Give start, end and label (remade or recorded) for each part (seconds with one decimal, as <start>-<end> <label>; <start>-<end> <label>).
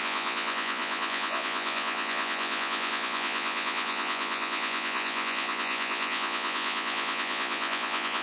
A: 0.0-8.2 remade